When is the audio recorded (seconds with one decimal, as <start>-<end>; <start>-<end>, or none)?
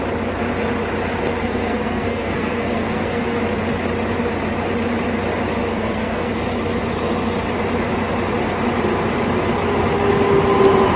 0.0-1.4; 3.4-5.7; 6.3-11.0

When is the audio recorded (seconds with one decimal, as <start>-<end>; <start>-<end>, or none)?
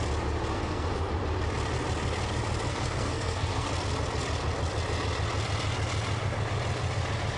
0.0-0.5; 1.1-2.7; 3.7-7.4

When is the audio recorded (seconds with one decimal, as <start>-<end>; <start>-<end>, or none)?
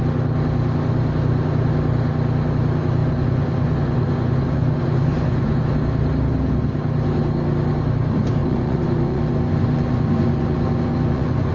0.0-3.0; 5.6-8.4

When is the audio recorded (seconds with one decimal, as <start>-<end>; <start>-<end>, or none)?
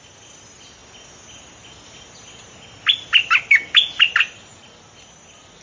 0.0-5.6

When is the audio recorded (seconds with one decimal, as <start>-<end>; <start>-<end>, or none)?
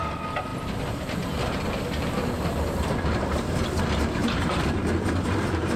0.0-0.5; 3.8-4.2; 5.0-5.8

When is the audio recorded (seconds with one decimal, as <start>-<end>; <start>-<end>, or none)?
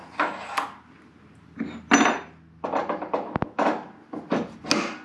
0.0-5.0